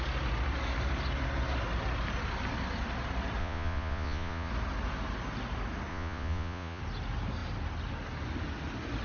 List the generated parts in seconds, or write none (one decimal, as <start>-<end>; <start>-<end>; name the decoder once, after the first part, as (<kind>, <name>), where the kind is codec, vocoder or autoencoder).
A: 3.4-4.5 (vocoder, Vocos); 5.9-6.8